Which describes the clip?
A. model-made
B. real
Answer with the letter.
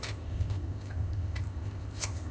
A